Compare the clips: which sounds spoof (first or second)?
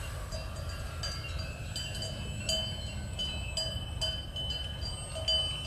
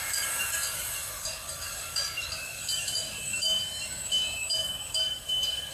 second